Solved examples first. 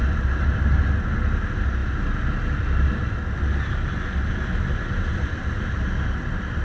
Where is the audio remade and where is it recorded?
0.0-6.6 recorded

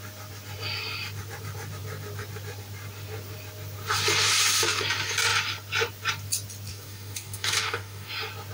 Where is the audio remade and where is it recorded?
0.0-6.7 recorded; 6.7-8.1 remade; 8.1-8.5 recorded